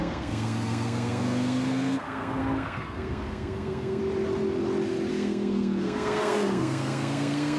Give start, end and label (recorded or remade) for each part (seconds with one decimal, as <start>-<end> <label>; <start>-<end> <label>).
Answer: 0.0-4.0 remade; 4.0-5.1 recorded; 5.1-7.6 remade